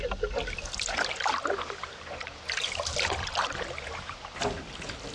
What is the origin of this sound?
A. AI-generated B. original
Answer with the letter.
B